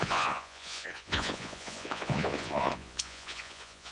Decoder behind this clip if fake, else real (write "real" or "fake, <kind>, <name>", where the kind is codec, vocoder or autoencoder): fake, vocoder, Vocos